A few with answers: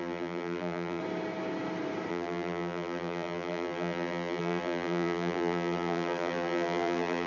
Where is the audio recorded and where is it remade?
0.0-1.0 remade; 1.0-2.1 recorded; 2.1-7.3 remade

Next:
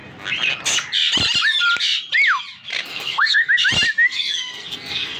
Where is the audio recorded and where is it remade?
0.0-2.9 recorded; 2.9-3.5 remade; 3.5-4.1 recorded; 4.1-5.2 remade